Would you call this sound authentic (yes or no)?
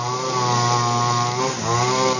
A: yes